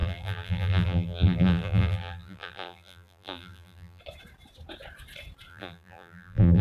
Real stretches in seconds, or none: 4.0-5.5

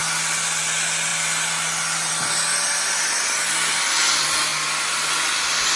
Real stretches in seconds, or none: 0.0-5.8

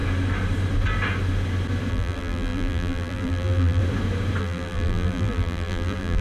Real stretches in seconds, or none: 0.0-1.9; 3.8-4.4

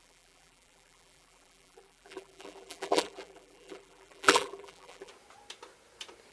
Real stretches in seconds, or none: 5.1-6.3

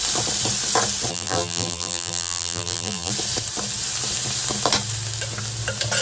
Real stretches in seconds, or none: 0.0-1.1; 3.1-6.0